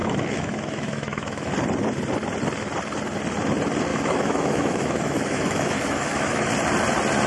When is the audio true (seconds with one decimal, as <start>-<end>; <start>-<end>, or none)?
1.5-3.9; 6.5-7.3